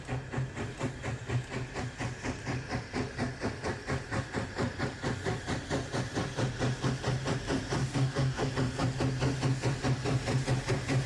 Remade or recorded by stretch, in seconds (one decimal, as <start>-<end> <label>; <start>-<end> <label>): 0.0-7.8 recorded; 7.8-8.5 remade; 8.5-11.1 recorded